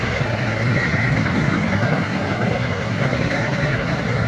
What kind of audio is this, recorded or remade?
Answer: remade